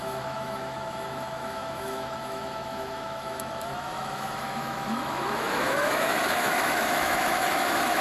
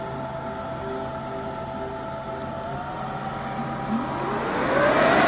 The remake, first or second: first